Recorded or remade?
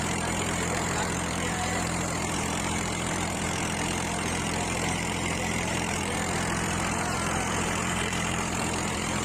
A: remade